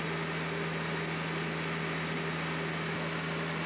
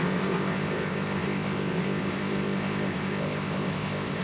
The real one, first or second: first